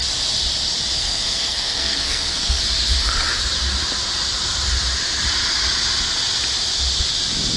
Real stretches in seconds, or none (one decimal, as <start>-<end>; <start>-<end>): 0.0-0.9; 2.6-7.6